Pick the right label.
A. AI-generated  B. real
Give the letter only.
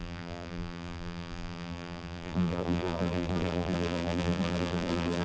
A